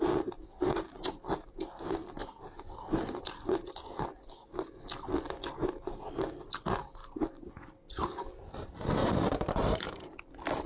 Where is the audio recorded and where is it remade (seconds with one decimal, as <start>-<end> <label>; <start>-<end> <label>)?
0.0-2.2 recorded; 2.2-3.3 remade; 3.3-9.0 recorded; 9.0-10.0 remade; 10.0-10.7 recorded